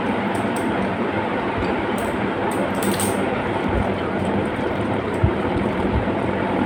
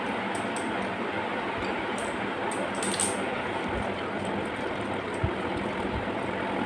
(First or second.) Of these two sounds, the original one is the second